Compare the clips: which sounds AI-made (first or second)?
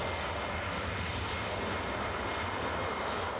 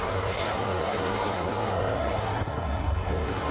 second